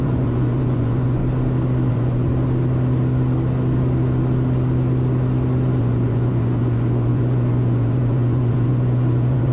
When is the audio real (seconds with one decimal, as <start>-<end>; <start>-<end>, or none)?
1.2-1.9; 2.3-5.8